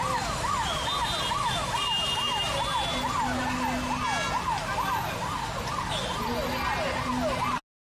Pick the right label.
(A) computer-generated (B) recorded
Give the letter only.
B